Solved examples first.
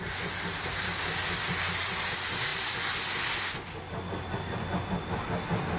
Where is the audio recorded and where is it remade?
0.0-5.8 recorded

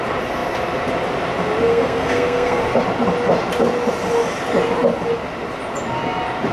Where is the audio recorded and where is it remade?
0.0-1.7 recorded; 1.7-2.6 remade; 2.6-6.5 recorded

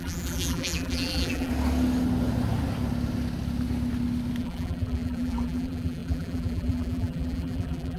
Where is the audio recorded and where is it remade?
0.0-1.5 remade; 1.5-4.4 recorded; 4.4-8.0 remade

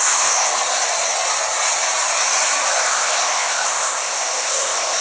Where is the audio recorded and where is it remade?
0.0-0.5 remade; 0.5-2.8 recorded; 2.8-5.0 remade

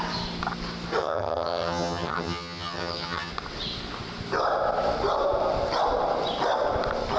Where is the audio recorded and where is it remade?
0.0-1.0 recorded; 1.0-3.3 remade; 3.3-7.2 recorded

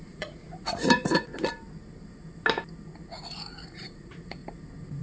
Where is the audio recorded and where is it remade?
0.0-1.3 remade; 1.3-3.7 recorded; 3.7-4.4 remade; 4.4-5.0 recorded

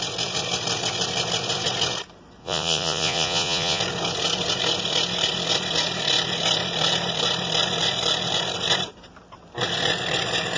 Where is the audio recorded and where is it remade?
0.0-2.4 recorded; 2.4-3.8 remade; 3.8-10.6 recorded

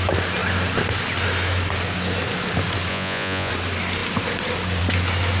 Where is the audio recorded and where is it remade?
0.0-2.9 recorded; 2.9-3.5 remade; 3.5-5.4 recorded